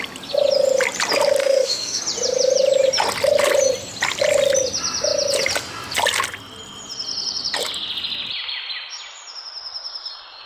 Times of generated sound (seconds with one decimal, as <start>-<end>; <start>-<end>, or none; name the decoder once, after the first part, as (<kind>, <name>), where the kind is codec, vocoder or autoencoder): 1.4-2.0 (autoencoder, DAC-VAE)